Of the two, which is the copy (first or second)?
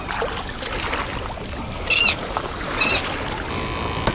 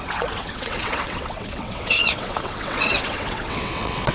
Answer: second